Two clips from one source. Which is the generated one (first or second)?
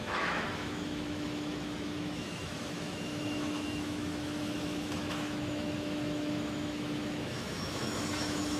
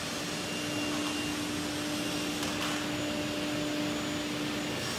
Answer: first